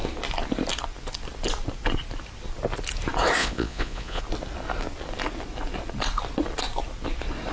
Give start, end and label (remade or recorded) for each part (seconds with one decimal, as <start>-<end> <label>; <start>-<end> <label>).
0.0-3.4 recorded; 3.4-4.2 remade; 4.2-7.5 recorded